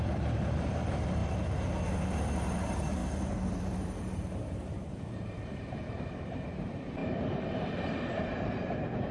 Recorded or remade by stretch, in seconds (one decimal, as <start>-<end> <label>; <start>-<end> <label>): 0.0-1.2 remade; 1.2-2.6 recorded; 2.6-9.1 remade